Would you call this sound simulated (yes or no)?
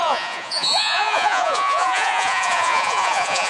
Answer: yes